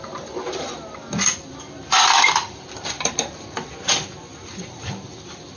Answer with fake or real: fake